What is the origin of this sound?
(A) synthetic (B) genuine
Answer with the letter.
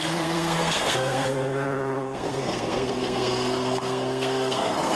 A